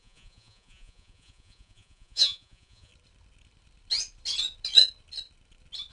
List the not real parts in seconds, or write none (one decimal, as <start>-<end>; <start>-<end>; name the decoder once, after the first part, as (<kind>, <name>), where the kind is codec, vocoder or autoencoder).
0.0-2.9 (vocoder, Vocos)